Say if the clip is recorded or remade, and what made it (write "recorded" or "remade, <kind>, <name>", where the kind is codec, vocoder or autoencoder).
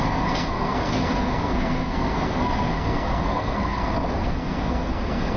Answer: remade, codec, SNAC